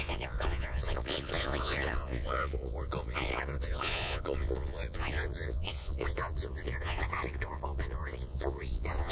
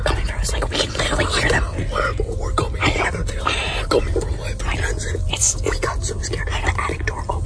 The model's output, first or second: first